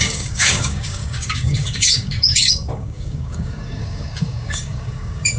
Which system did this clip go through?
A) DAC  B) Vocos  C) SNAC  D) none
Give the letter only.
A